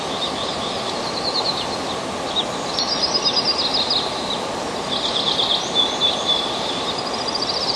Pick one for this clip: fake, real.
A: real